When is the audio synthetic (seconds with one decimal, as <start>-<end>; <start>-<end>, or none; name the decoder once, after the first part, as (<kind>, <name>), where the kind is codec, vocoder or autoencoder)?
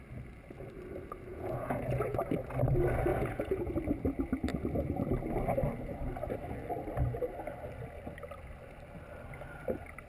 1.3-2.2 (vocoder, Vocos); 3.1-3.7